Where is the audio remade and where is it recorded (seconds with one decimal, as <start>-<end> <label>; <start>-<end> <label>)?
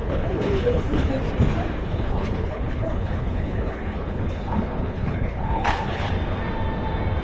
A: 0.0-1.1 remade; 1.1-1.8 recorded; 1.8-6.1 remade; 6.1-7.2 recorded